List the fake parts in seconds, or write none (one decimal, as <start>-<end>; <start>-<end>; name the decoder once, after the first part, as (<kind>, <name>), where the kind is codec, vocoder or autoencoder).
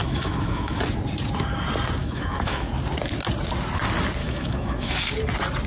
0.0-0.8 (autoencoder, DAC-VAE); 2.0-2.7; 4.2-5.1